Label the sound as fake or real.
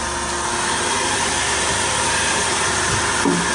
real